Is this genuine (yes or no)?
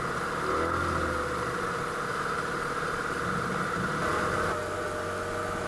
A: yes